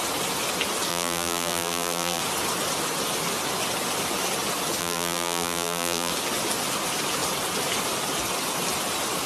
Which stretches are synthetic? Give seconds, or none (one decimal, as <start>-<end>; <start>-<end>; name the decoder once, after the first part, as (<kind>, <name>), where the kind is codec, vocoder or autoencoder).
0.9-2.2 (vocoder, BigVGAN v2); 4.8-6.1